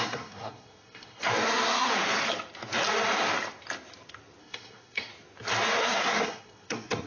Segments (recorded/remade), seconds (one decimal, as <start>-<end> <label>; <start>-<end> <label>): 0.0-1.9 remade; 1.9-4.4 recorded; 4.4-5.1 remade; 5.1-5.8 recorded; 5.8-7.1 remade